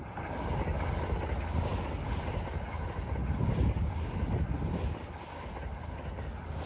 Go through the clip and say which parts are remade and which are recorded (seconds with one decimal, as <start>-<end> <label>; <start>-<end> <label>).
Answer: 0.0-6.7 recorded